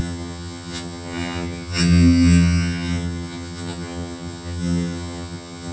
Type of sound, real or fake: fake